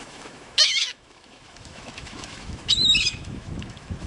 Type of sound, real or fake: fake